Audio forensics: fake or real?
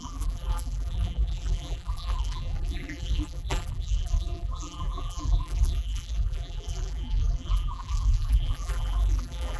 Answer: fake